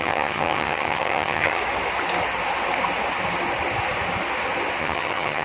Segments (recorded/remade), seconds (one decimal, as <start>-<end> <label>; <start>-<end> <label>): 0.0-1.6 remade; 1.6-4.8 recorded; 4.8-5.4 remade